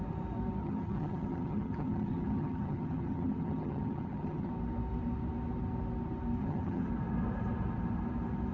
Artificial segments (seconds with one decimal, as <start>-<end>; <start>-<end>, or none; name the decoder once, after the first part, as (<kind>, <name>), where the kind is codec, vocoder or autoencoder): 0.6-4.5 (vocoder, HiFi-GAN); 6.4-6.9